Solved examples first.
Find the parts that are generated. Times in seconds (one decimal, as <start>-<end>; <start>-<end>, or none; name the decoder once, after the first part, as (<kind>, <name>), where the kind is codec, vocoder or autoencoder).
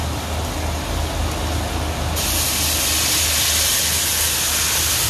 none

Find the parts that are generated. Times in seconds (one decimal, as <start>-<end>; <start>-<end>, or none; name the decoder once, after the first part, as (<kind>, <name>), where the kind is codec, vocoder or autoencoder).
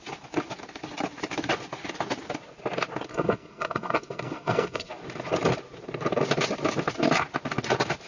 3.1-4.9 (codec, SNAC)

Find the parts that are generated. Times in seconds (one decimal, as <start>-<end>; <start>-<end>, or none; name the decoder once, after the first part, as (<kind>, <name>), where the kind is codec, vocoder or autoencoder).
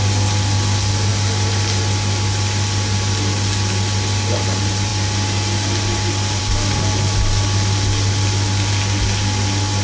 none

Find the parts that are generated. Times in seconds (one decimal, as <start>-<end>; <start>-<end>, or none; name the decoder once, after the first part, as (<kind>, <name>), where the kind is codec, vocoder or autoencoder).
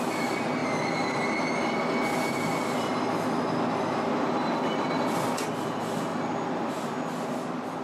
none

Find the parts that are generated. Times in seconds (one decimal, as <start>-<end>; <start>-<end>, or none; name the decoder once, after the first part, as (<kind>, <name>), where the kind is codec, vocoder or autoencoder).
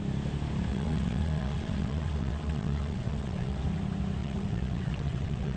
0.7-3.6 (vocoder, WaveNeXt); 4.2-5.6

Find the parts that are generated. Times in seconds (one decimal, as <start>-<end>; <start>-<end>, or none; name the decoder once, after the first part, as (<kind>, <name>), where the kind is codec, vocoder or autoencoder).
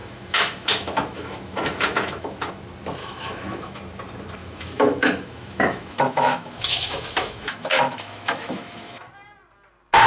0.0-2.5 (autoencoder, DAC-VAE); 3.0-3.8; 4.4-9.1